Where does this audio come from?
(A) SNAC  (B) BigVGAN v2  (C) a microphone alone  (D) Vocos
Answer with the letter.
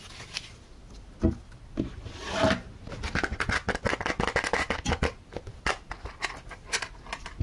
C